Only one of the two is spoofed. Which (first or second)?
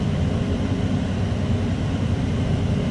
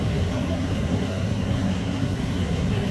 second